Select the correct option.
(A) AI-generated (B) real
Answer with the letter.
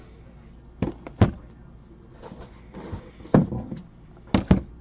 B